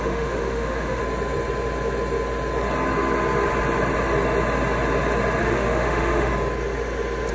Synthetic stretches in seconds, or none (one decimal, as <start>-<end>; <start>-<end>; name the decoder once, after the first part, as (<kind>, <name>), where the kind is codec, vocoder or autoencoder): 0.0-1.0 (autoencoder, DAC-VAE); 5.4-6.3